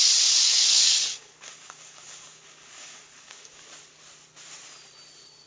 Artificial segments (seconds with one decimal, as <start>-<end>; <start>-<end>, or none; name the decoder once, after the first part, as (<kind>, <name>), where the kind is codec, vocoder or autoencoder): 0.4-3.7 (codec, DAC)